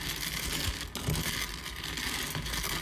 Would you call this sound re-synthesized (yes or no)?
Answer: no